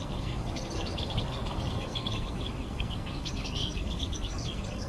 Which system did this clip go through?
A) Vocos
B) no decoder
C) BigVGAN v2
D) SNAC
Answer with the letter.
D